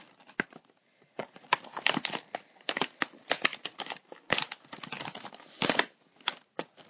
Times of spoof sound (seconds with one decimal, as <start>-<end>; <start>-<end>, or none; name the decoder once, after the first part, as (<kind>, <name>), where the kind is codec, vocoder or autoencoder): 0.8-1.6 (vocoder, Vocos)